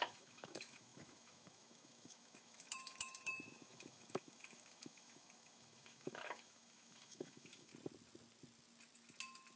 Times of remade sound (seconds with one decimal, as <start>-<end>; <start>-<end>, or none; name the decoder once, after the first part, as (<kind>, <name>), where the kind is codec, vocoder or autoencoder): 0.0-7.7 (autoencoder, DAC-VAE)